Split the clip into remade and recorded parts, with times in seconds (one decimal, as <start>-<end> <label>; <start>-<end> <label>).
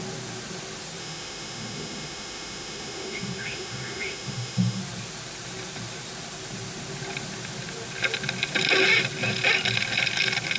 0.0-1.0 recorded; 1.0-4.8 remade; 4.8-10.6 recorded